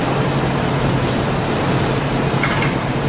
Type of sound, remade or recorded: remade